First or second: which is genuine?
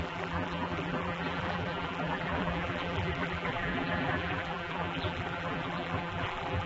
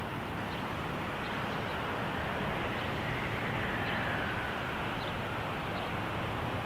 second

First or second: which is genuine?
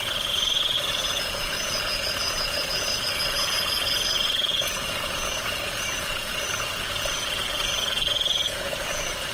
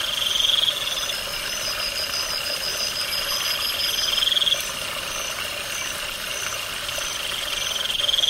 second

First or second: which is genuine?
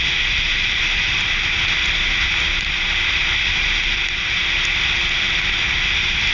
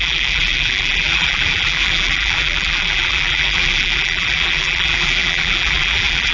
first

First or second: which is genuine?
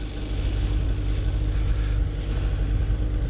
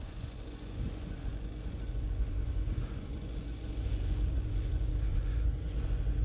first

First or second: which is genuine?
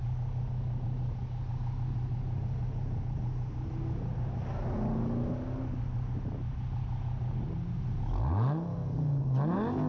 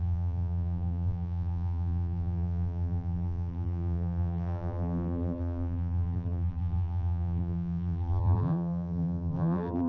first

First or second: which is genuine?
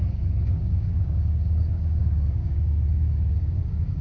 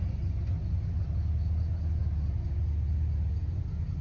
second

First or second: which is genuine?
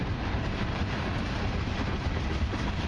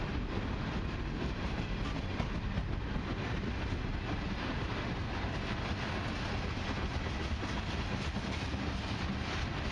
second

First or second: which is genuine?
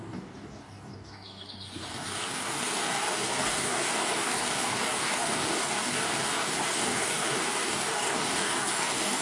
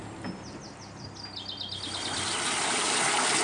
second